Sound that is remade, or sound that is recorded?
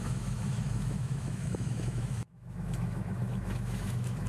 remade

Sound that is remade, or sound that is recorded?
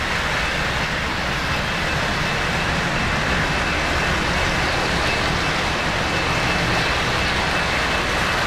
recorded